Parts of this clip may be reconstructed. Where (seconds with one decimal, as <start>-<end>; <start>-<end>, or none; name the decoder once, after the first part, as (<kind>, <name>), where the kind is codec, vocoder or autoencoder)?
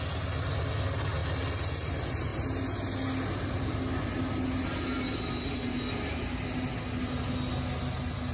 none